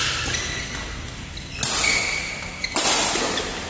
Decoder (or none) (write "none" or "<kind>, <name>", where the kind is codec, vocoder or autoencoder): none